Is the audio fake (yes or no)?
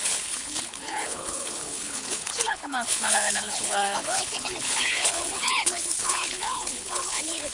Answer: yes